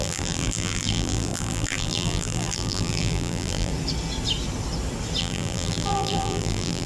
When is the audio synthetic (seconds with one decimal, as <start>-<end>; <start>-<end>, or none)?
0.0-3.7; 5.2-6.9